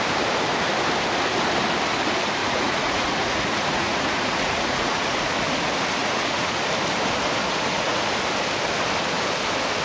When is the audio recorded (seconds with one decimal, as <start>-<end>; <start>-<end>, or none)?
0.0-2.4; 5.3-6.0; 6.6-7.4; 8.0-9.8